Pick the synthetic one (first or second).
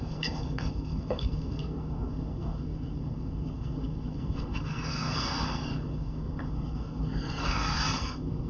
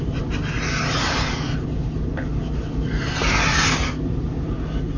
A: first